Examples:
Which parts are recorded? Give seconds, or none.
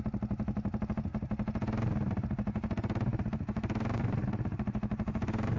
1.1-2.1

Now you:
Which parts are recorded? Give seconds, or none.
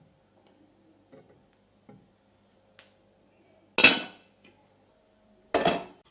0.0-6.1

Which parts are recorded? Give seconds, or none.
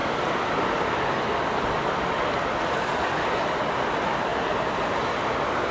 0.0-4.3; 4.9-5.7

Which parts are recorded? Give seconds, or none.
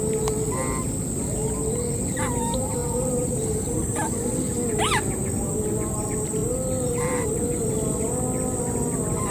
0.0-6.4; 7.0-9.3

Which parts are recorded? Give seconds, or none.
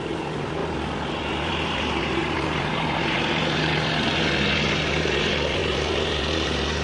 0.6-1.5; 4.1-4.8